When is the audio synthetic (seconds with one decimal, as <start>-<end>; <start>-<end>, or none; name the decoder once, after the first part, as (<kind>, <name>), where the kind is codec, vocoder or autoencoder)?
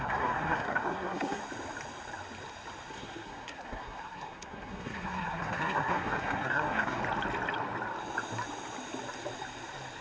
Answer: 0.0-1.4 (codec, SNAC); 2.9-7.0